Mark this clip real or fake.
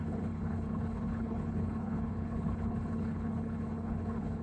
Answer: fake